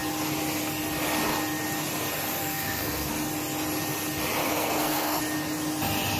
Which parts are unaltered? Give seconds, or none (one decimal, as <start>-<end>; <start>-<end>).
0.0-2.4; 3.1-4.4; 5.2-6.2